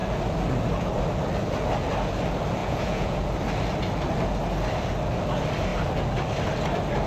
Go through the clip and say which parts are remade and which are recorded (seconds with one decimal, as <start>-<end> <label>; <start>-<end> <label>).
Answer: 0.0-2.6 recorded; 2.6-3.2 remade; 3.2-7.1 recorded

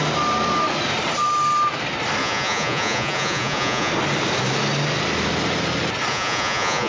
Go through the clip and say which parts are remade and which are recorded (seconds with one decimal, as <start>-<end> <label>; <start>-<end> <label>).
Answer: 0.0-2.2 recorded; 2.2-3.9 remade; 3.9-6.1 recorded; 6.1-6.9 remade

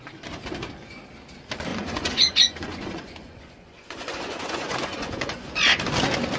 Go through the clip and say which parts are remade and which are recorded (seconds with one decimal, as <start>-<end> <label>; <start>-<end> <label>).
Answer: 0.0-1.7 recorded; 1.7-5.5 remade; 5.5-6.4 recorded